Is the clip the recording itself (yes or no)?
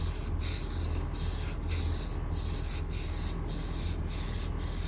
yes